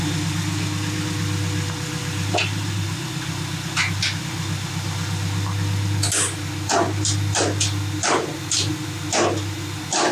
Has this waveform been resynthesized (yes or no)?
no